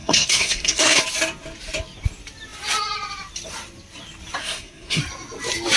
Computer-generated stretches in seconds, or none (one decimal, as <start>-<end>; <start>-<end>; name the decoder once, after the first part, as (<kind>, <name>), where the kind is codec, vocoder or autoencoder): 0.0-1.0 (codec, SNAC); 4.4-5.0